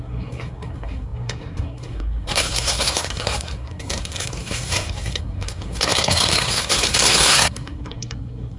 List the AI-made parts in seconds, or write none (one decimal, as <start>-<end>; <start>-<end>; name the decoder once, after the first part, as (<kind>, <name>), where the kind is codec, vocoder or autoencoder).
0.0-8.6 (codec, SNAC)